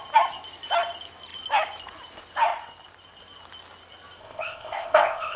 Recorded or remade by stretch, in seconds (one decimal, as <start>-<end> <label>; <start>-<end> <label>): 0.0-4.2 recorded; 4.2-5.4 remade